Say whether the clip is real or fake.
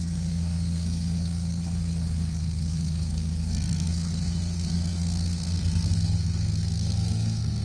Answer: fake